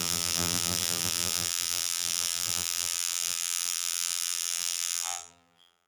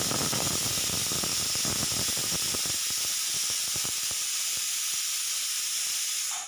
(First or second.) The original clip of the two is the second